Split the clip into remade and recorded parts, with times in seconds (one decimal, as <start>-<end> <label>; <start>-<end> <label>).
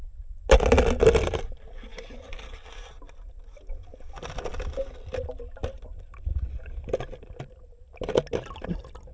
0.0-9.1 recorded